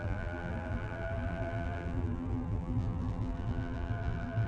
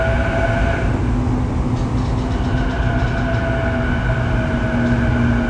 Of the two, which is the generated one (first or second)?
first